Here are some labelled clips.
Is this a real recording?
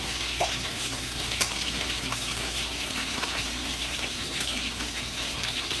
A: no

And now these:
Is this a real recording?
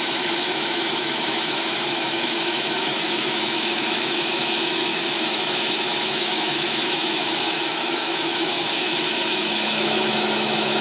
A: no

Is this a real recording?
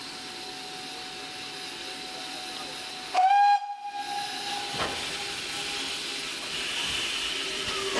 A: yes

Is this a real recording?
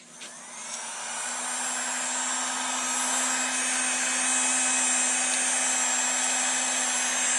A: yes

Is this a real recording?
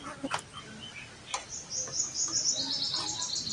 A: yes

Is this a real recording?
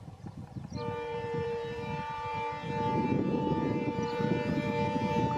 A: no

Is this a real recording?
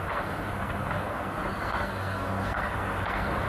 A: no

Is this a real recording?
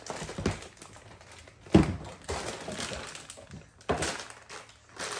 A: yes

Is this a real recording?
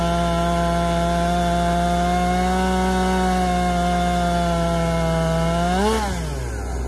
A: yes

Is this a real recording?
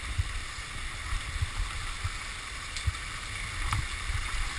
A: yes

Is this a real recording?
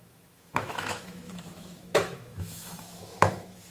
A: no